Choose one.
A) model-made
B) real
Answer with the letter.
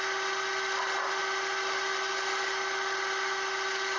B